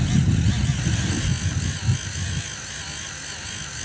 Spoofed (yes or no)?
no